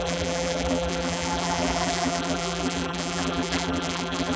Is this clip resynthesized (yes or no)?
yes